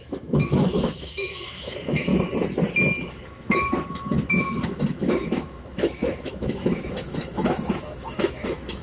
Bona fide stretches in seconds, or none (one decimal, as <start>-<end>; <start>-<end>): 2.1-3.1